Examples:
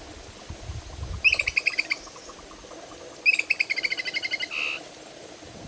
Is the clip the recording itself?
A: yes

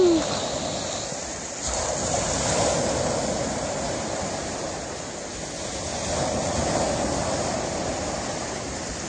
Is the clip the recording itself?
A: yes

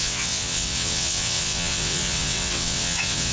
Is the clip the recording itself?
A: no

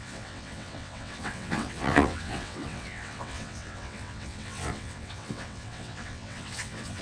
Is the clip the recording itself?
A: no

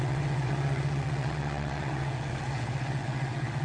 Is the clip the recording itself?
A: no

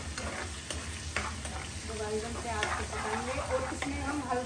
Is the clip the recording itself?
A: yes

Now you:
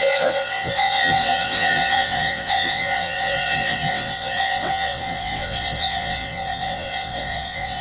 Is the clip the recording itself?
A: no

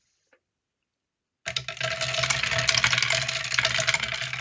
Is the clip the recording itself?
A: yes